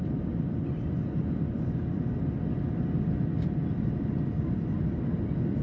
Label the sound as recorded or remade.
recorded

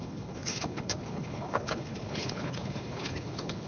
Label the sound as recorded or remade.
remade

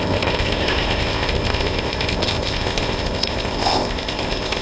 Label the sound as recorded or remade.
remade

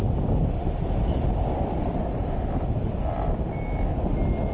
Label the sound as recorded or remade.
recorded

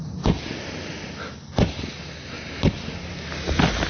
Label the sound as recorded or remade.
recorded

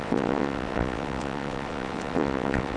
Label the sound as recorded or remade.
remade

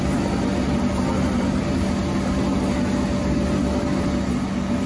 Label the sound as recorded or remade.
recorded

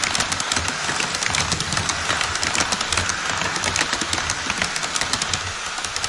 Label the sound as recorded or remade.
recorded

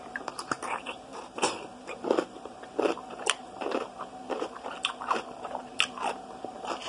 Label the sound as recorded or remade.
remade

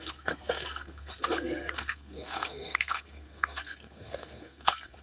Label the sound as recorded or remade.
remade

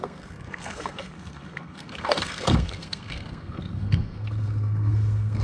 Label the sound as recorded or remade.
remade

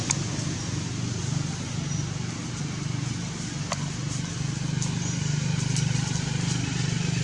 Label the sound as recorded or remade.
recorded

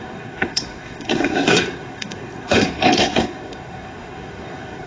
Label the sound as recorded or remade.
remade